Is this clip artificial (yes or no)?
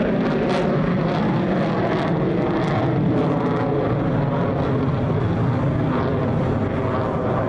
no